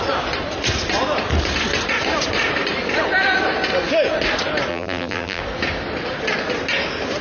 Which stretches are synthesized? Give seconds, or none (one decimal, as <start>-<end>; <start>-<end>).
4.7-5.4